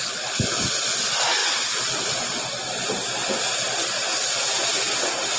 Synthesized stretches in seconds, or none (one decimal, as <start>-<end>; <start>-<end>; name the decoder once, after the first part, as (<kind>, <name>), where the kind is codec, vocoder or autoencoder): none